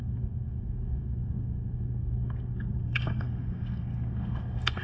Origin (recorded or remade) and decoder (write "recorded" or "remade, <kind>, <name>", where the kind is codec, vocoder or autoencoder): remade, codec, SNAC